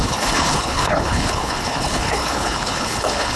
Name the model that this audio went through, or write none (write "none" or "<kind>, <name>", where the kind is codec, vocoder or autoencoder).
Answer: codec, HILCodec